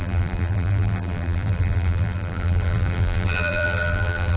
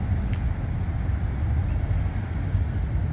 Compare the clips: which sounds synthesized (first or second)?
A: first